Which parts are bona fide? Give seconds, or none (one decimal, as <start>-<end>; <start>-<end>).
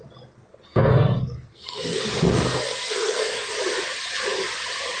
0.0-0.5; 3.5-5.0